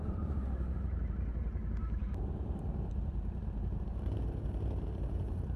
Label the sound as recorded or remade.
remade